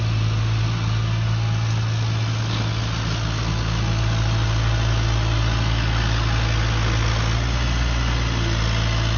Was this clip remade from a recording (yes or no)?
no